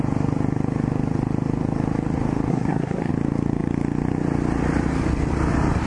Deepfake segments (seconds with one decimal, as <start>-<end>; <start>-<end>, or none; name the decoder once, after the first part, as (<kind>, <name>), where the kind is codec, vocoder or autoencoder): 2.5-3.1 (codec, SNAC)